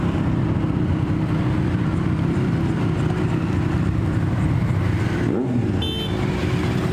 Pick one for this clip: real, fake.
real